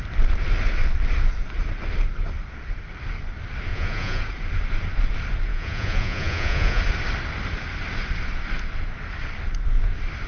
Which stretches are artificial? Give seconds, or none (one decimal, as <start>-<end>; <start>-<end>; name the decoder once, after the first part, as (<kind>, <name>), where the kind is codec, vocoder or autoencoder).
3.7-4.2 (vocoder, Vocos); 5.5-6.8